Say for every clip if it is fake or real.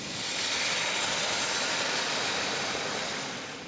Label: real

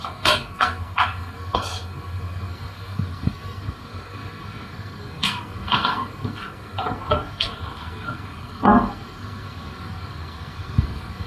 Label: fake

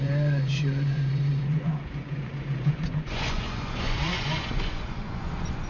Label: fake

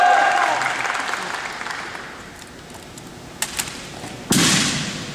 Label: real